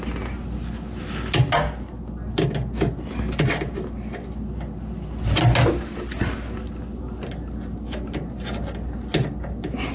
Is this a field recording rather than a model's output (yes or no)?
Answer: yes